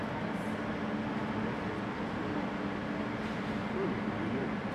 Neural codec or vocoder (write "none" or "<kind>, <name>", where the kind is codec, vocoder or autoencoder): none